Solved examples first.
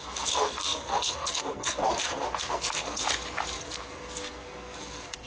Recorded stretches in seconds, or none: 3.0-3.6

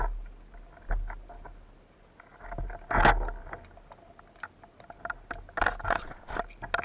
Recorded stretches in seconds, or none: 0.0-6.8

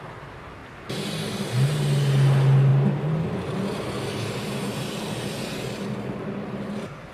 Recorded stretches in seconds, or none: 0.0-7.1

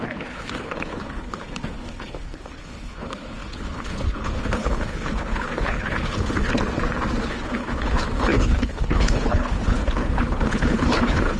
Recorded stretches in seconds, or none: 6.5-7.2

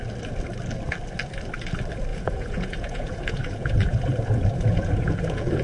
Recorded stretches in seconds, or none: 0.0-2.1